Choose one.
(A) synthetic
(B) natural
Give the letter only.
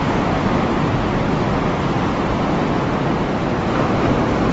B